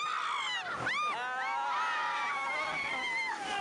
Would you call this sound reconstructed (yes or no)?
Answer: no